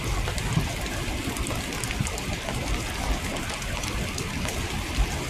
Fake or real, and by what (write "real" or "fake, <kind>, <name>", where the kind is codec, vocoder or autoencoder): real